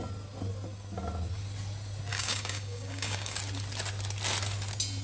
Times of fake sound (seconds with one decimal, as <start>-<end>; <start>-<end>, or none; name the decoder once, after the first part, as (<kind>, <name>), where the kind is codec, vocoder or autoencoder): 2.1-3.4 (codec, DAC)